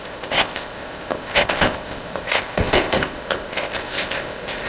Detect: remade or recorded remade